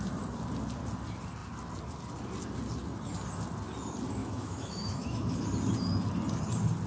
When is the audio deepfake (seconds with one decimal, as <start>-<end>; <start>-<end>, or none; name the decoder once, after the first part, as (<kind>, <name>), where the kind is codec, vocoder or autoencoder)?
4.2-5.4 (autoencoder, DAC-VAE)

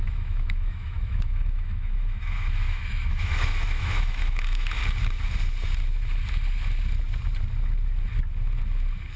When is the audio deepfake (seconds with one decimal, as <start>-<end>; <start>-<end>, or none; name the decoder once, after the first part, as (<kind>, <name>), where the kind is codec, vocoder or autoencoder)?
0.0-4.8 (autoencoder, DAC-VAE)

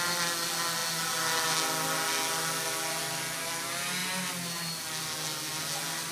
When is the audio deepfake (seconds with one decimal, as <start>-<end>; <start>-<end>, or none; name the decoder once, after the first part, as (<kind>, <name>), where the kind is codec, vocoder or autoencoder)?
none

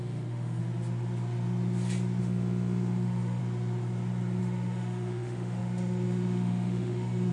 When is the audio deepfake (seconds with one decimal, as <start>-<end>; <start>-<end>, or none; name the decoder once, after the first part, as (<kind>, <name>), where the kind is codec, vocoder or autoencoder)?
0.0-0.6 (autoencoder, DAC-VAE); 2.2-3.4; 4.4-7.3

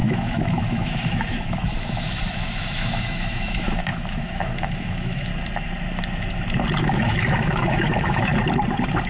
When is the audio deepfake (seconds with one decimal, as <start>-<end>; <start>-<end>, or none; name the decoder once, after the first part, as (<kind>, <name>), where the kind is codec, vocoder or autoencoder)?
0.0-5.3 (autoencoder, DAC-VAE); 6.8-8.3